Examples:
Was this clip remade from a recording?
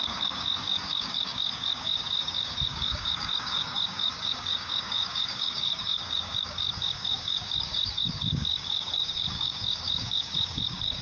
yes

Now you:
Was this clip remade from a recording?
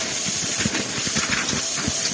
no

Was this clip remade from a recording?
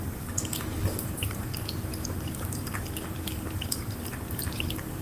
yes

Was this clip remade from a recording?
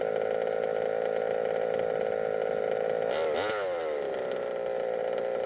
no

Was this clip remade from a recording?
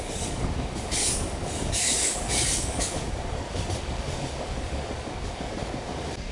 yes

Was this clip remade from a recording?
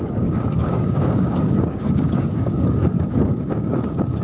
yes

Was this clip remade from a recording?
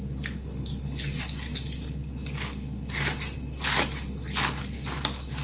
no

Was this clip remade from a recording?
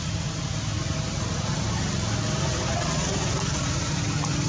no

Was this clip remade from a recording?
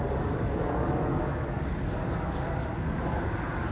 yes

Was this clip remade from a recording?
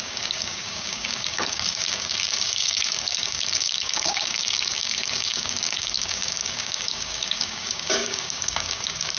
yes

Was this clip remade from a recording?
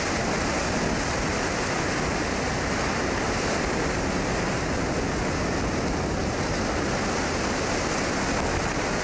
no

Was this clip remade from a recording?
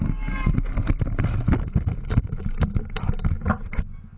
no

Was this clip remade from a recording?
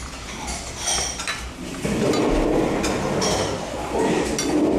no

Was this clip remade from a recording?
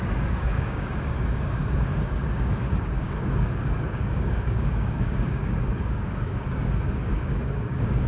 yes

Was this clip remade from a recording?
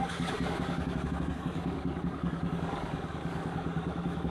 yes